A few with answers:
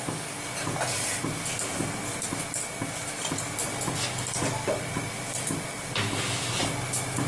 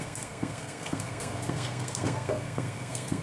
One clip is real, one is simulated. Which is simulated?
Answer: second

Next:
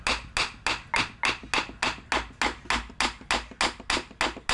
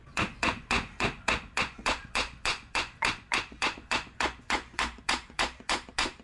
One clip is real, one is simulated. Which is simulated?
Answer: second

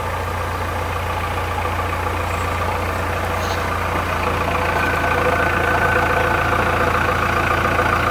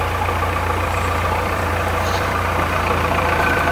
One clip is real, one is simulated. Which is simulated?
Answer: second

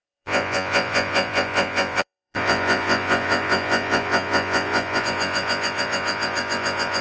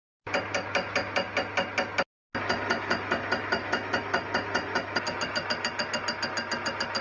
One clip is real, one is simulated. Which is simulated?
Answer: first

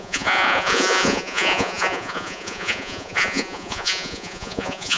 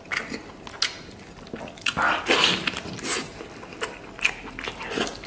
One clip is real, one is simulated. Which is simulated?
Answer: first